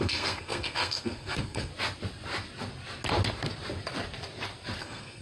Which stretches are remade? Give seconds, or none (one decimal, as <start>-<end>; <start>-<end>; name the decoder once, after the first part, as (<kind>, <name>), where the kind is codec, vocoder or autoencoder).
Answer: 0.0-1.7 (codec, SNAC); 4.8-5.2